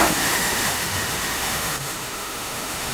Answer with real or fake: fake